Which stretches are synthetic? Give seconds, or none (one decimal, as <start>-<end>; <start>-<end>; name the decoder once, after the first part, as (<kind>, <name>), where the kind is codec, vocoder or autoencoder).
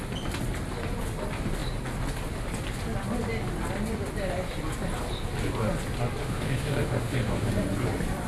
6.2-7.5 (autoencoder, DAC-VAE)